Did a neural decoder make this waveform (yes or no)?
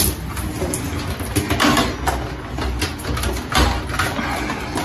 no